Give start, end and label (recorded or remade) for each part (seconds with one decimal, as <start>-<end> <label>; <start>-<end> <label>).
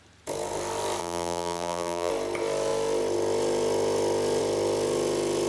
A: 0.0-1.0 recorded; 1.0-2.1 remade; 2.1-5.5 recorded